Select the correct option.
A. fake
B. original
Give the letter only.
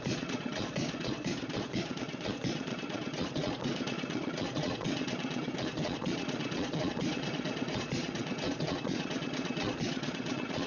A